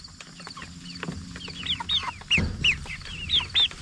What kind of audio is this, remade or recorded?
recorded